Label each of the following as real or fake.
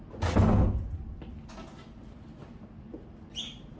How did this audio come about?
real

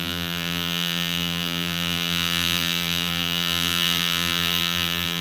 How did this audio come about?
fake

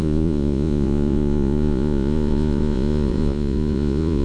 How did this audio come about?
fake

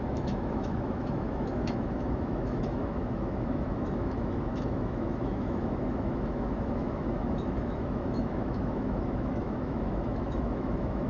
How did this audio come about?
fake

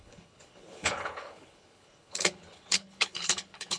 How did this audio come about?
fake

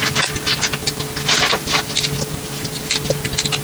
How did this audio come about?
real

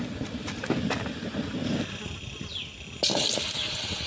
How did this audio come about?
real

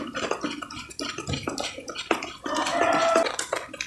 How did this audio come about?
real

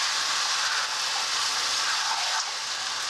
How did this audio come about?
real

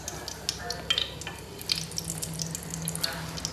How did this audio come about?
real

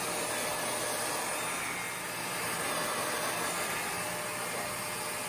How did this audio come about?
real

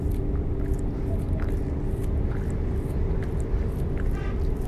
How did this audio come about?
real